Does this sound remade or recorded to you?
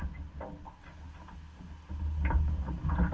recorded